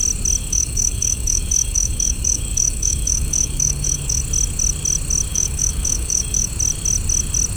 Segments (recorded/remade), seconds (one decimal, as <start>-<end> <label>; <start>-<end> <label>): 0.0-0.4 recorded; 0.4-4.2 remade; 4.2-5.3 recorded; 5.3-6.5 remade; 6.5-7.6 recorded